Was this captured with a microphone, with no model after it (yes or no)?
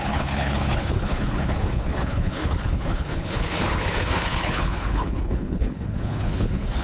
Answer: no